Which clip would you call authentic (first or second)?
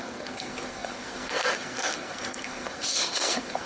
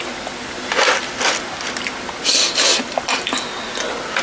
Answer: second